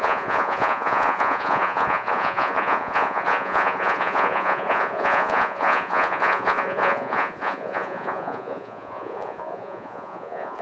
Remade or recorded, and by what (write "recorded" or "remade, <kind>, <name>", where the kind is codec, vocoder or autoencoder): remade, vocoder, Vocos